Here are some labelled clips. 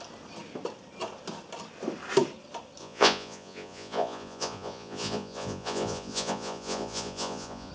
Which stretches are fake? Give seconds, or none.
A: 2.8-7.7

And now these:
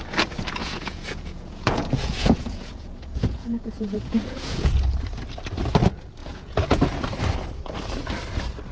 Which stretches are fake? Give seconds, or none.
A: 0.6-4.7; 6.2-6.8

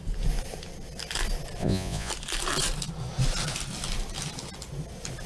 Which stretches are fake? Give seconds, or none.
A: 1.6-2.1